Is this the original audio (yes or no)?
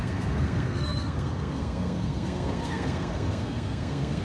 no